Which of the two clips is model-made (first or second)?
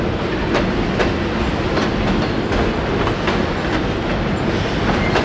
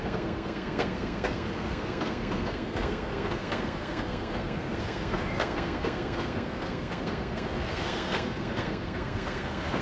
second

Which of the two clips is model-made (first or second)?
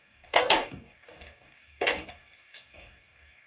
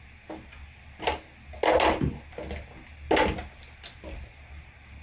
first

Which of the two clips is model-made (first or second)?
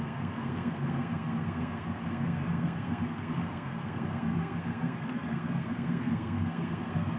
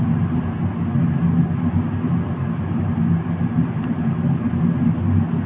first